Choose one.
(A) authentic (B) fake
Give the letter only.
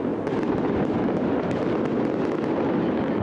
A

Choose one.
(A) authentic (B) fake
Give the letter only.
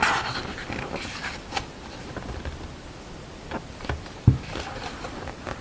B